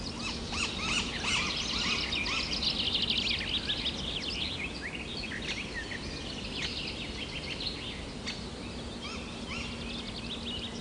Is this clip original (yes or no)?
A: yes